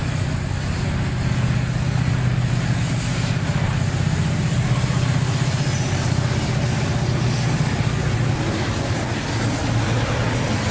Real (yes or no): yes